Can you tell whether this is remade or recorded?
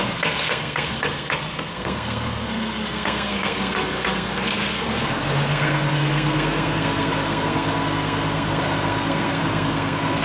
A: remade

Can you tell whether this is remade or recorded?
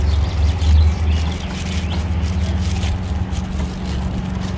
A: recorded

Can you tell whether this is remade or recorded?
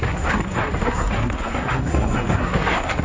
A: remade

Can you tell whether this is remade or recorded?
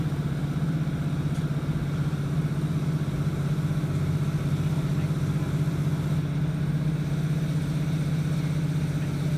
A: recorded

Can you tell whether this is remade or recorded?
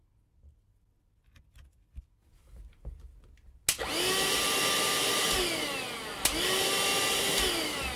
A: recorded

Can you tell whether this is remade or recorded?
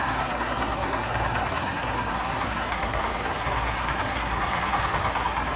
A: remade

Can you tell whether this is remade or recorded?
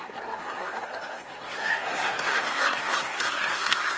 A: remade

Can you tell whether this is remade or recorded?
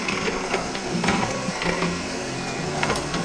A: remade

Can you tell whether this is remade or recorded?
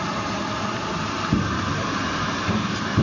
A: recorded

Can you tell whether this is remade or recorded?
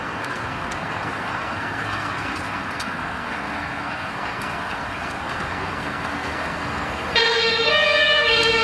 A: remade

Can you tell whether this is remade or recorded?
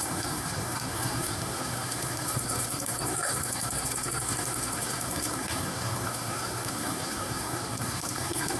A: remade